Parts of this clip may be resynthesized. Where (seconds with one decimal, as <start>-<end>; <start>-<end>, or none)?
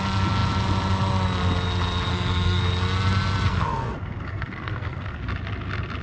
2.1-2.6; 3.5-5.2